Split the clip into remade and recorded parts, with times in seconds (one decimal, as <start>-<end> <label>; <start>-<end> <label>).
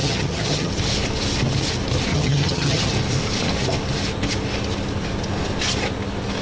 0.0-0.7 remade; 0.7-2.1 recorded; 2.1-2.9 remade; 2.9-6.4 recorded